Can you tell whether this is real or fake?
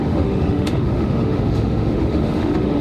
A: fake